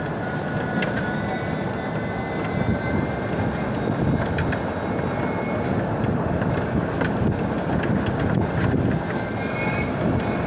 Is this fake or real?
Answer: real